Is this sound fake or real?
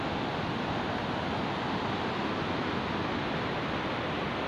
real